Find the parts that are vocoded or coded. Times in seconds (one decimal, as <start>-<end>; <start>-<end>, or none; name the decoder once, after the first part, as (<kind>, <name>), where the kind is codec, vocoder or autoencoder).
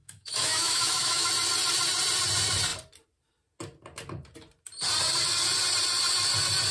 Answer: 0.0-1.3 (autoencoder, DAC-VAE)